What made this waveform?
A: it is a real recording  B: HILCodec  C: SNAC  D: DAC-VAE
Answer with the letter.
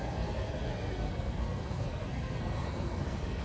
C